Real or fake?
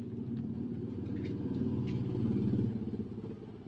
real